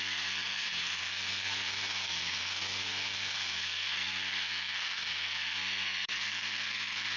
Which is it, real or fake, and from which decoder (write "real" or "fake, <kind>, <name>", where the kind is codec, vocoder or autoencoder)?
fake, codec, SNAC